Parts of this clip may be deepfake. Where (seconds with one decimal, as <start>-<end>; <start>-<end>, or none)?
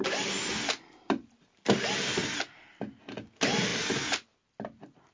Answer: none